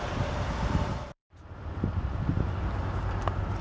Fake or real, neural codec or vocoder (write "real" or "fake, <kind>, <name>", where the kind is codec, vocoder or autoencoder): real